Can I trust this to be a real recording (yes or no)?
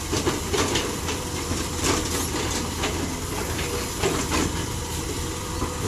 no